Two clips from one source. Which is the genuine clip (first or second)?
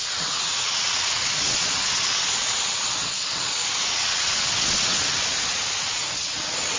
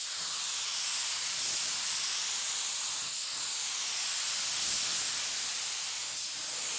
second